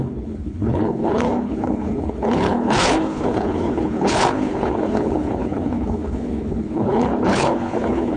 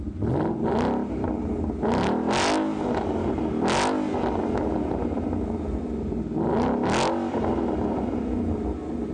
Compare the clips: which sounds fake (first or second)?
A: first